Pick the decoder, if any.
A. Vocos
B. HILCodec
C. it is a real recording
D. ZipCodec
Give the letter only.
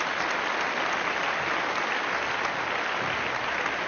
C